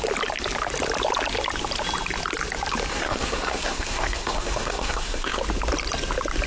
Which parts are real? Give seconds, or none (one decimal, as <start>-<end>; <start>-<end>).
0.0-2.9; 5.4-6.5